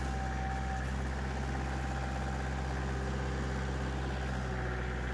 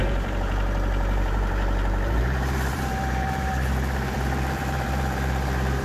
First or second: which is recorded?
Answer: first